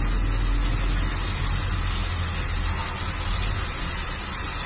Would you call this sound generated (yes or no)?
no